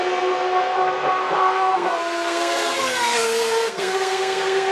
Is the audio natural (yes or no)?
no